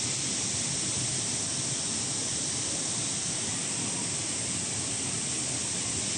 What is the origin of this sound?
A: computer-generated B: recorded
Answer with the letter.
B